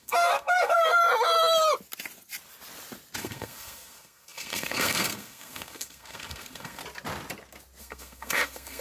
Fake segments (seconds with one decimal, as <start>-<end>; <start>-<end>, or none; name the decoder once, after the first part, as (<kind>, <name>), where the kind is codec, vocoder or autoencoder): 0.0-1.0 (codec, SNAC); 3.2-6.8; 7.8-8.8